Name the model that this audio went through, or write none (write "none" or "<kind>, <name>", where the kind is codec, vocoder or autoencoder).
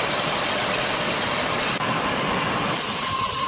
none